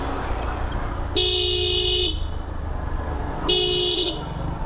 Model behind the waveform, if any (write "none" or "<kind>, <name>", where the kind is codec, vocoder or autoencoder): none